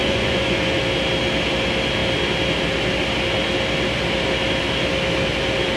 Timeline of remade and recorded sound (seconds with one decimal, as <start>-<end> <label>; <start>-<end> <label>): 0.0-0.8 remade; 0.8-5.8 recorded